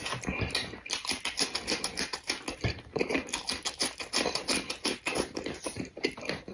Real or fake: real